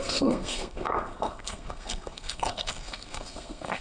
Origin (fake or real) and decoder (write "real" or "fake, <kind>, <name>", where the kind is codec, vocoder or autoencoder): fake, codec, SNAC